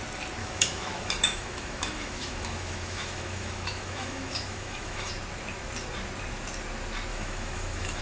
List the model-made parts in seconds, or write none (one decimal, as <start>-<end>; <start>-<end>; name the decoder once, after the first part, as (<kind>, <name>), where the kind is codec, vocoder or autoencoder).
0.4-5.1 (autoencoder, DAC-VAE); 7.1-8.0